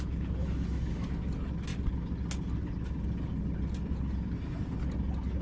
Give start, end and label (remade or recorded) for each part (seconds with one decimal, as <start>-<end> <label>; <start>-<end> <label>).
0.0-0.4 recorded; 0.4-1.1 remade; 1.1-5.4 recorded